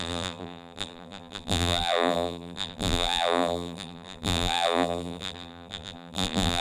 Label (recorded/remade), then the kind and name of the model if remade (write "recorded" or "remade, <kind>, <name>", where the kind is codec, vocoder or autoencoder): remade, vocoder, BigVGAN v2